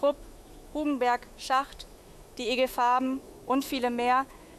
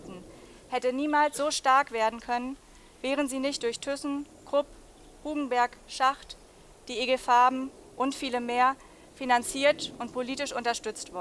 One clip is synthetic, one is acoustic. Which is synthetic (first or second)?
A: first